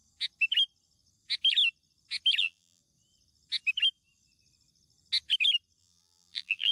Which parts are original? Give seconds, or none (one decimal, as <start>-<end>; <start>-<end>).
0.0-2.4; 2.8-5.8